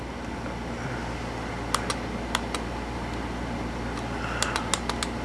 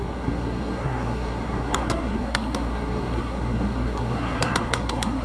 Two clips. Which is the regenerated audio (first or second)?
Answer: second